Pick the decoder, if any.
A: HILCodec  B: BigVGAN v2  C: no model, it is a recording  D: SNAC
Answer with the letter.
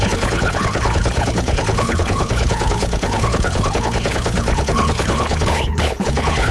A